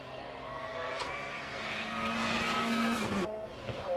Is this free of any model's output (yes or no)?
no